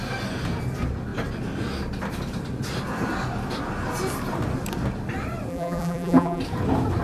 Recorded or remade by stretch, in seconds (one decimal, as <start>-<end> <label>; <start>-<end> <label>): 0.0-5.5 recorded; 5.5-6.4 remade; 6.4-7.0 recorded